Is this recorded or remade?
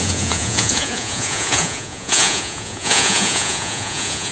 remade